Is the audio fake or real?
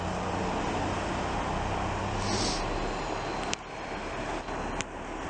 real